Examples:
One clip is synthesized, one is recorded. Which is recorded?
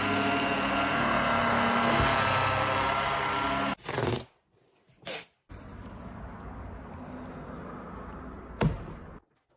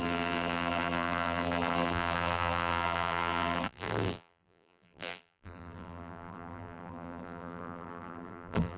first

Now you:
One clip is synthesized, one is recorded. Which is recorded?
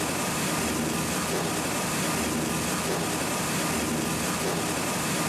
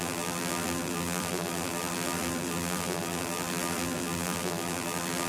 first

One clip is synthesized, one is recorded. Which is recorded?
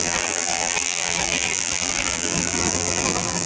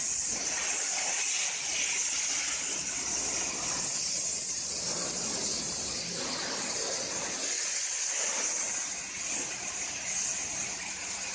second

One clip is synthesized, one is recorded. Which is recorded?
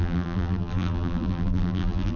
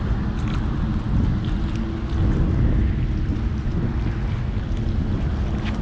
second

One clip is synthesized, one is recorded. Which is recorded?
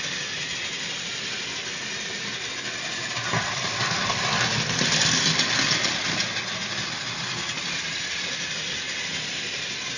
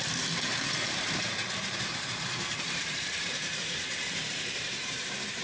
first